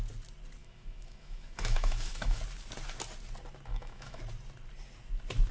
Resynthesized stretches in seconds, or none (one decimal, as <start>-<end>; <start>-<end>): 0.6-2.4; 3.7-4.2